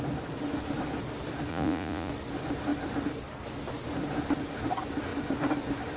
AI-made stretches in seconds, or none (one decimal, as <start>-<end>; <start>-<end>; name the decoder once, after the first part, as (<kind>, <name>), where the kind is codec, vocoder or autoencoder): 1.5-2.1 (vocoder, Vocos)

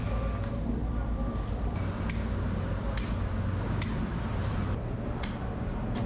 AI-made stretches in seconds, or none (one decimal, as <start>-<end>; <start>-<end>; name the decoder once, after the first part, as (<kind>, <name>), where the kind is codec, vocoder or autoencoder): none